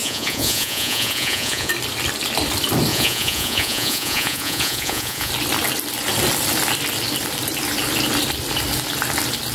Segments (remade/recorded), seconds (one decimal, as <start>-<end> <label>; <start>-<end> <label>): 0.0-1.7 remade; 1.7-2.9 recorded; 2.9-5.3 remade; 5.3-9.5 recorded